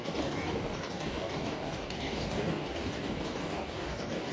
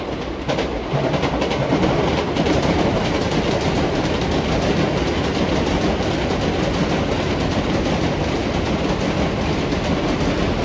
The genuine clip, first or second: second